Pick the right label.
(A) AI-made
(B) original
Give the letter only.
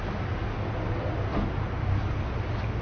B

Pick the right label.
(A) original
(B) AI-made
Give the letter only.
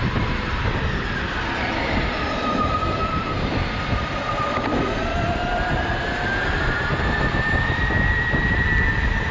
A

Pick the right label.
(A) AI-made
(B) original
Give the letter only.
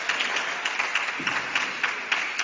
B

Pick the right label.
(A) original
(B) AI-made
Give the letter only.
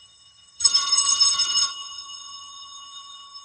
B